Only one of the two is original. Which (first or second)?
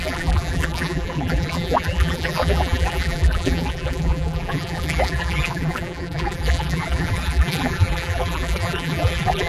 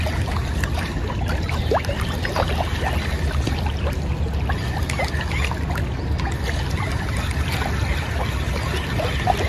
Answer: second